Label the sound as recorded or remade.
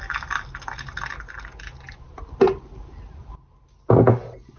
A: recorded